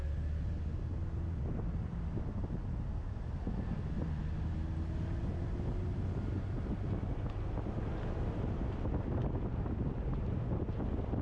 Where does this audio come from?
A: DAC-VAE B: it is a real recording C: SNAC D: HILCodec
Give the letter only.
B